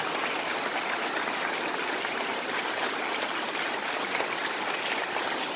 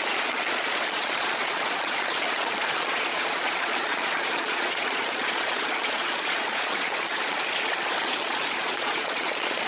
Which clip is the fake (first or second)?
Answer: second